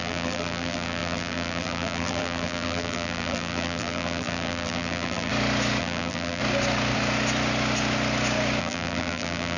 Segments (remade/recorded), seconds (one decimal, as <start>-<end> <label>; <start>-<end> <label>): 0.0-5.3 remade; 5.3-5.8 recorded; 5.8-6.4 remade; 6.4-8.6 recorded; 8.6-9.6 remade